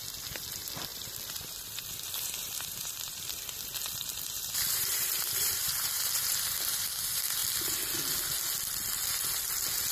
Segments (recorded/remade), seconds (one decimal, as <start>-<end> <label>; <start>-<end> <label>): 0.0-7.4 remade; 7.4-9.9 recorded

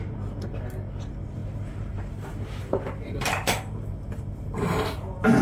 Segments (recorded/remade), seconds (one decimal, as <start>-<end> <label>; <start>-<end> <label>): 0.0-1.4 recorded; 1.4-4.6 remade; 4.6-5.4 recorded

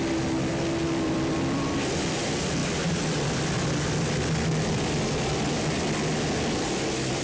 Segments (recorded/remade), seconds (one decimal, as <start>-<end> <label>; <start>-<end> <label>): 0.0-0.8 recorded; 0.8-2.0 remade; 2.0-2.6 recorded; 2.6-7.2 remade

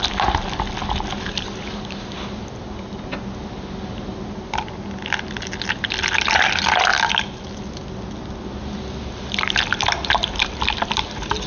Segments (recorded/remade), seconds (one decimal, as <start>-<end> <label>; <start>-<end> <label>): 0.0-11.5 recorded

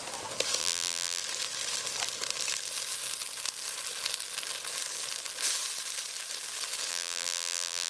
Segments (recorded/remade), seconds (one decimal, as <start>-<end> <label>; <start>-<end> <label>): 0.0-0.6 recorded; 0.6-1.2 remade; 1.2-6.9 recorded; 6.9-7.9 remade

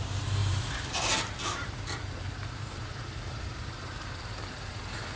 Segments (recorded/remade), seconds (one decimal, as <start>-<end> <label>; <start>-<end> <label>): 0.0-0.4 recorded; 0.4-0.9 remade; 0.9-1.6 recorded; 1.6-4.7 remade; 4.7-5.2 recorded

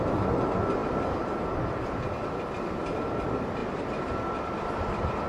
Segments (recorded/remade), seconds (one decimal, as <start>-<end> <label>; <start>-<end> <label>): 0.0-5.3 recorded